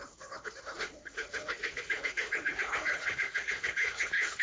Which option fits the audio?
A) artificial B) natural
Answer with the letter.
A